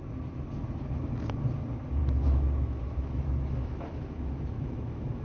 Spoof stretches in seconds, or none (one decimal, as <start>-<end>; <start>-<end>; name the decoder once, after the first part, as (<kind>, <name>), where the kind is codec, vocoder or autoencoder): 2.0-5.2 (autoencoder, DAC-VAE)